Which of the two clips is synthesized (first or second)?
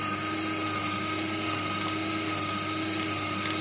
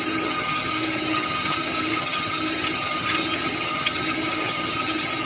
second